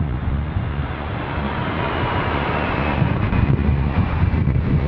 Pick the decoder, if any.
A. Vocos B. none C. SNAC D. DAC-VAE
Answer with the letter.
A